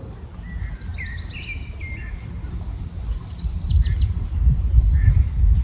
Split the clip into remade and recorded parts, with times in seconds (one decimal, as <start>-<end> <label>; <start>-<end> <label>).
0.0-5.6 recorded